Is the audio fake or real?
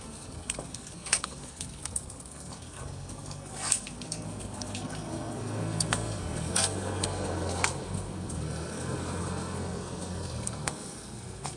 fake